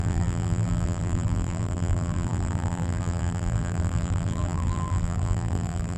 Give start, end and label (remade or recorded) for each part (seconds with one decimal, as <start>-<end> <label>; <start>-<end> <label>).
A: 0.0-6.0 remade